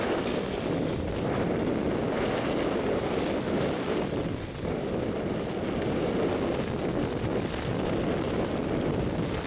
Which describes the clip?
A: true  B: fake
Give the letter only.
A